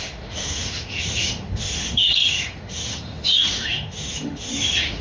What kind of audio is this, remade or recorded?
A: remade